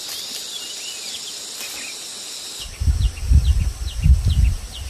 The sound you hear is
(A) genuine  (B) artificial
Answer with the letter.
A